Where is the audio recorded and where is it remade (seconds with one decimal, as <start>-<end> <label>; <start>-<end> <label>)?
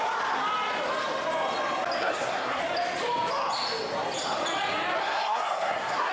0.0-2.0 recorded; 2.0-2.6 remade; 2.6-5.0 recorded; 5.0-6.1 remade